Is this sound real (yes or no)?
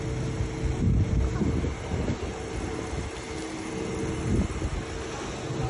yes